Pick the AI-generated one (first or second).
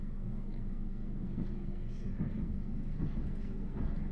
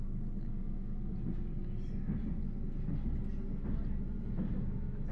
first